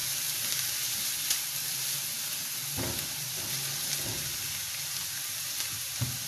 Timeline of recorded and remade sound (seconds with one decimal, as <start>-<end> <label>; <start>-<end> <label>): 0.0-6.3 recorded